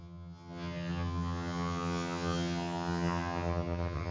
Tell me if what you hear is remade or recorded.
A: remade